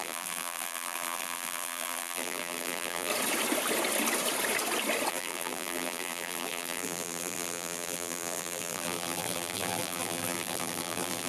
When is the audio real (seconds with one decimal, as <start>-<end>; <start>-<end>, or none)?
3.1-5.1